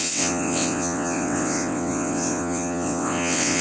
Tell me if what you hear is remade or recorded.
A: remade